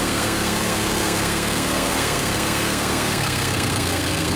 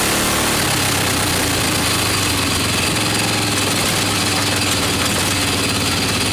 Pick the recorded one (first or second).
second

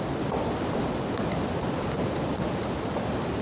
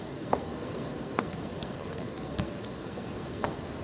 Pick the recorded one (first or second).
first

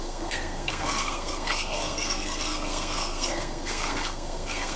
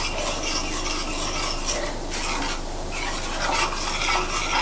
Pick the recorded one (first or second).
second